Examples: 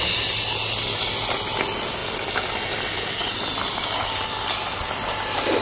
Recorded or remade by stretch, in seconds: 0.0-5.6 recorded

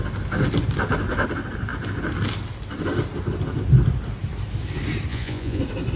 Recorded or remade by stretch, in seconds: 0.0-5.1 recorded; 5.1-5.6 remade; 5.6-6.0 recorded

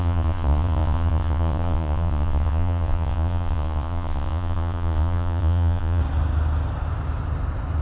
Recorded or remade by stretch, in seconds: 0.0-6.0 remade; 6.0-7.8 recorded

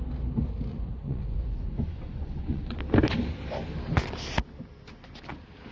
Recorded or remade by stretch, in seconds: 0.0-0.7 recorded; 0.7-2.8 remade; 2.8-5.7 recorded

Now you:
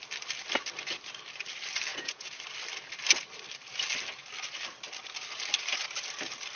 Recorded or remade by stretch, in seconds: 0.0-1.9 recorded; 1.9-2.4 remade; 2.4-6.6 recorded